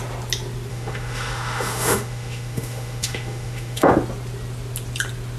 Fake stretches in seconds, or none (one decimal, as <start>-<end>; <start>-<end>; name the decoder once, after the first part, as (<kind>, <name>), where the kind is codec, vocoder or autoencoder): 0.7-3.9 (autoencoder, DAC-VAE)